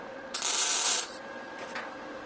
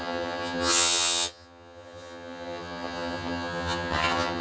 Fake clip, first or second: second